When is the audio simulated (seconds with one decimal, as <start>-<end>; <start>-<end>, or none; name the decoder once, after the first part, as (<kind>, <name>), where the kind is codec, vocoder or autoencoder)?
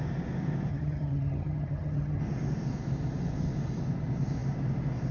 0.7-2.2 (vocoder, HiFi-GAN)